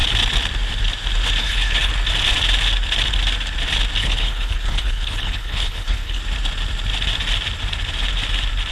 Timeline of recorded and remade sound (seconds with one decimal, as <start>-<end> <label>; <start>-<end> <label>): 0.0-1.4 recorded; 1.4-1.9 remade; 1.9-4.0 recorded; 4.0-6.2 remade; 6.2-8.7 recorded